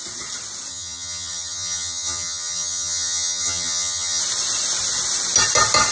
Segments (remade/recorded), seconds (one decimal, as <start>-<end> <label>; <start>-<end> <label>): 0.0-0.7 recorded; 0.7-4.2 remade; 4.2-5.9 recorded